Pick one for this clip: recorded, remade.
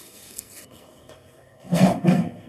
remade